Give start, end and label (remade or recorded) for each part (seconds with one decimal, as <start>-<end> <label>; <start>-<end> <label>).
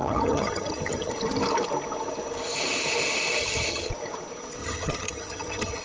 0.0-1.1 remade; 1.1-3.4 recorded; 3.4-3.9 remade; 3.9-4.6 recorded; 4.6-5.8 remade